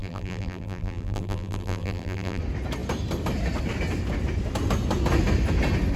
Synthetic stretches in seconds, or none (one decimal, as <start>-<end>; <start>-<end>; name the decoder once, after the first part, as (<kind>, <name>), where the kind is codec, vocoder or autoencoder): 0.0-2.4 (vocoder, BigVGAN v2)